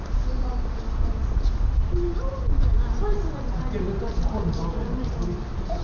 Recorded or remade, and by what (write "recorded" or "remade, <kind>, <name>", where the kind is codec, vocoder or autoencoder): recorded